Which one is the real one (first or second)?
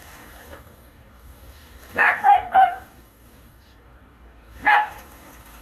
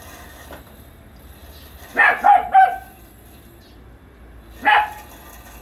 second